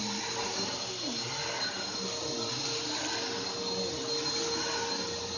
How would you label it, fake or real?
real